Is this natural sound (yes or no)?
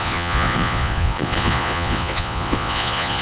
no